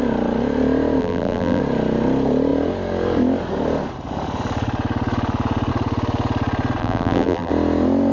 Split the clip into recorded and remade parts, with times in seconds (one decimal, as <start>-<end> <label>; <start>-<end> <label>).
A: 0.0-1.0 recorded; 1.0-1.6 remade; 1.6-6.8 recorded; 6.8-7.5 remade; 7.5-8.1 recorded

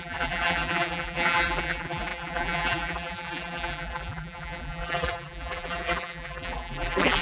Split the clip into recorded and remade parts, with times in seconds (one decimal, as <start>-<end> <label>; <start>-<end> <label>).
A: 0.0-7.2 remade

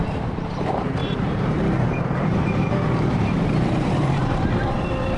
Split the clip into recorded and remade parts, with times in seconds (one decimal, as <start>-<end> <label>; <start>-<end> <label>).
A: 0.0-5.2 remade

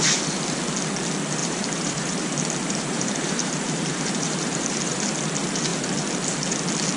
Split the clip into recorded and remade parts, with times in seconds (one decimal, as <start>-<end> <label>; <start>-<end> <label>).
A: 0.0-1.4 recorded; 1.4-5.1 remade; 5.1-7.0 recorded

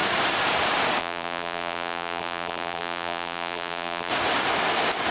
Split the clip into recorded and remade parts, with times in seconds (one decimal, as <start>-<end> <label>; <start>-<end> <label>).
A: 0.0-1.0 recorded; 1.0-4.1 remade; 4.1-5.1 recorded

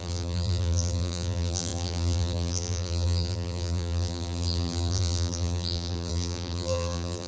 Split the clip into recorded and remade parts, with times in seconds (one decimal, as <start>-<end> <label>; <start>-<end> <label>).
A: 0.0-7.3 remade

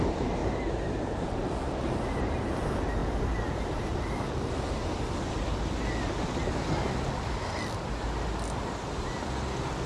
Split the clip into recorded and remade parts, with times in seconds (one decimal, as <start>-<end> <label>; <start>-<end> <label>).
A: 0.0-0.4 recorded; 0.4-1.3 remade; 1.3-9.9 recorded

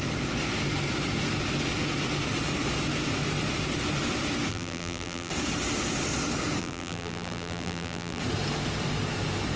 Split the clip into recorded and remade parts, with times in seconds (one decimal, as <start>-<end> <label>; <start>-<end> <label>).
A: 0.0-4.5 recorded; 4.5-5.3 remade; 5.3-6.6 recorded; 6.6-8.2 remade; 8.2-9.6 recorded